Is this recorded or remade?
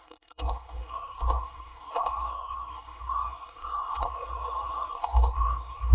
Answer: remade